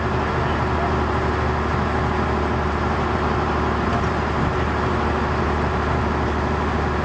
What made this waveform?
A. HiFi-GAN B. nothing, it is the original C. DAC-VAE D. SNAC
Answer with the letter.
B